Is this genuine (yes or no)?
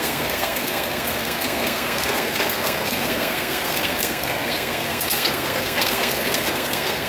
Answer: no